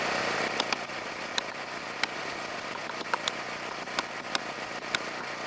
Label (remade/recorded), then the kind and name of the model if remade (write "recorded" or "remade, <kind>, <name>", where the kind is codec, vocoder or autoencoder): recorded